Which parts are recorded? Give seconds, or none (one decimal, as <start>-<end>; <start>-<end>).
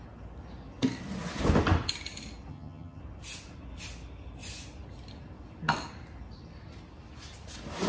0.0-2.5; 3.0-7.9